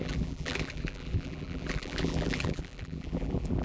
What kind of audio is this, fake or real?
fake